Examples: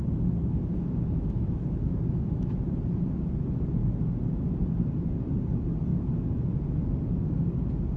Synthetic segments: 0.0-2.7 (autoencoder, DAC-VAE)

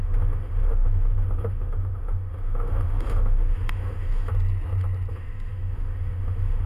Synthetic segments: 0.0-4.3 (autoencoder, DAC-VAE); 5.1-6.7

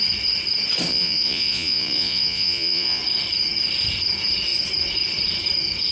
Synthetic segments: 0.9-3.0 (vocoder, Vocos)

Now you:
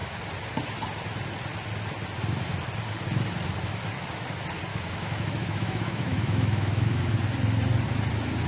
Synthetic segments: 4.7-7.1 (autoencoder, DAC-VAE)

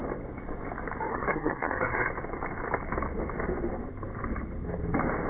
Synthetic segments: 1.1-2.1 (codec, SNAC)

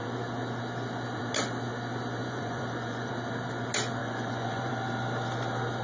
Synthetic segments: 2.2-3.1 (vocoder, Vocos); 4.0-4.7